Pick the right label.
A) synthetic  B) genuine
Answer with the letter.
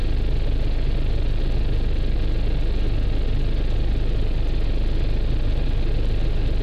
B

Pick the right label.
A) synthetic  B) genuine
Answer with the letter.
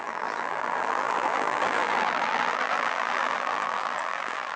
A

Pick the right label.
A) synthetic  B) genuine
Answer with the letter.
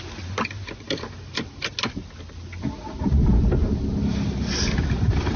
B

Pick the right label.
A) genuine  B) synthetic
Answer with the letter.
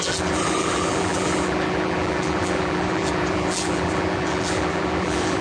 B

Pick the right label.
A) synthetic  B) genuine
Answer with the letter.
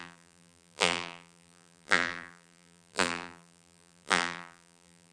A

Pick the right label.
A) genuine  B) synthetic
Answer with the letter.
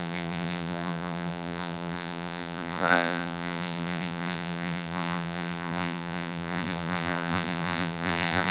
B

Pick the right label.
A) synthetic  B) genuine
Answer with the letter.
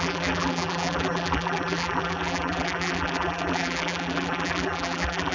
A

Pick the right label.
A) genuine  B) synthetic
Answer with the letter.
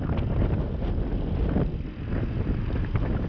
A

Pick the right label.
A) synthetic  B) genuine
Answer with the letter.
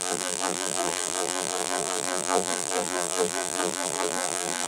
A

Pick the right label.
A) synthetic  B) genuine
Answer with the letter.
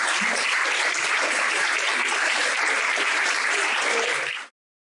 A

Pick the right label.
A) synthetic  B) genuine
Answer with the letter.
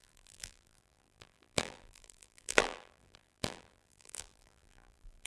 A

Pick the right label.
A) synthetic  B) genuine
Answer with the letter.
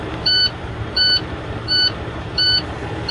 A